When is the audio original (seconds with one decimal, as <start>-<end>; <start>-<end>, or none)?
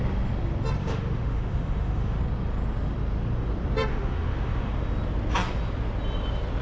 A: 0.0-0.8; 2.2-3.9; 4.7-6.6